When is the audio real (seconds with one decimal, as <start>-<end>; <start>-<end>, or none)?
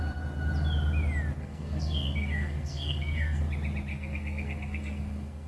0.0-1.4; 3.4-3.9